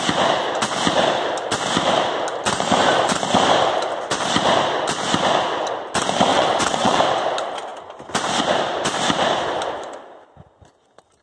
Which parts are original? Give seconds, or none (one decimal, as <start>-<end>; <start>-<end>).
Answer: 0.0-6.3; 7.0-11.2